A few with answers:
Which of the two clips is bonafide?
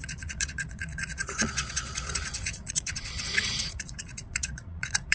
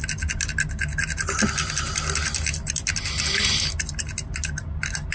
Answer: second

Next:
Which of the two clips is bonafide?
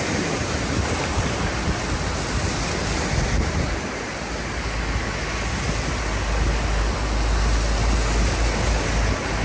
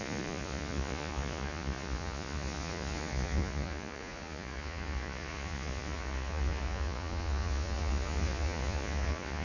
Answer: first